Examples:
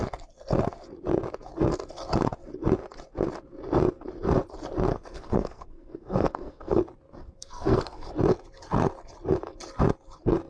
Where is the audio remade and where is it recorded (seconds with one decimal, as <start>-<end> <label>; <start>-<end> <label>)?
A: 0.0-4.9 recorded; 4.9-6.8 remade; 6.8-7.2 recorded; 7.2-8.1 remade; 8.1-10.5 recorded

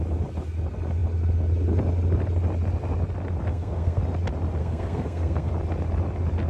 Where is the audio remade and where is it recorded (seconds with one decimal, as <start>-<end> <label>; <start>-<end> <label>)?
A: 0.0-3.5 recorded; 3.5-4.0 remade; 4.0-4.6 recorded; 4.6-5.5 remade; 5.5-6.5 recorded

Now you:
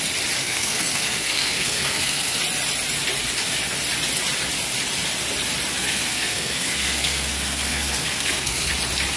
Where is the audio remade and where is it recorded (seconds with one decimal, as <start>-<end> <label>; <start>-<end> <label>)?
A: 0.0-0.4 recorded; 0.4-2.4 remade; 2.4-5.8 recorded; 5.8-8.7 remade; 8.7-9.2 recorded

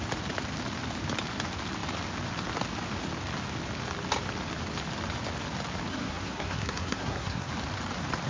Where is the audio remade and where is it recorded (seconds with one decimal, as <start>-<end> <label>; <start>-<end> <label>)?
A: 0.0-5.9 recorded; 5.9-7.5 remade; 7.5-8.3 recorded

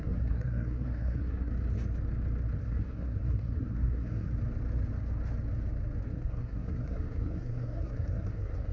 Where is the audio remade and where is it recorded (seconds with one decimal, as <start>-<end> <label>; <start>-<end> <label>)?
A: 0.0-1.5 remade; 1.5-2.6 recorded; 2.6-4.3 remade; 4.3-6.0 recorded; 6.0-8.7 remade

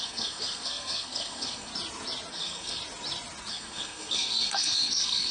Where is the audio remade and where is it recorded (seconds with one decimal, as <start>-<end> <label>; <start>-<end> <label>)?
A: 0.0-1.7 remade; 1.7-2.3 recorded; 2.3-2.8 remade; 2.8-3.5 recorded; 3.5-5.3 remade

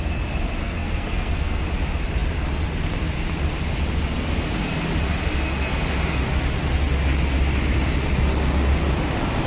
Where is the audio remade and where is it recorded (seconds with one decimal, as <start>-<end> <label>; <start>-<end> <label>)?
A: 0.0-0.6 recorded; 0.6-1.6 remade; 1.6-9.5 recorded

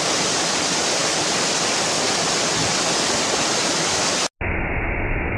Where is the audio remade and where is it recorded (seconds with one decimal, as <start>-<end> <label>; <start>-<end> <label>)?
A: 0.0-5.4 recorded